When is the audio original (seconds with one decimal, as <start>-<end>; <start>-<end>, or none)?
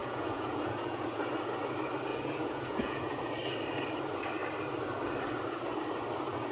1.3-2.1; 3.3-6.5